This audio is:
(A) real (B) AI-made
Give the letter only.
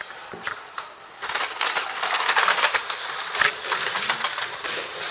A